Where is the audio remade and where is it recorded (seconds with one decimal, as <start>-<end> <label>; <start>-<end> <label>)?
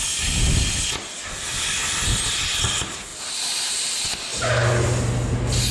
0.0-3.1 recorded; 3.1-3.9 remade; 3.9-5.7 recorded